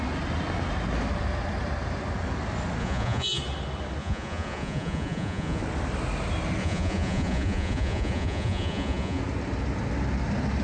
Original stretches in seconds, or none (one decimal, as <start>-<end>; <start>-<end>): 0.0-2.8; 3.4-4.0; 5.6-6.6; 9.2-10.6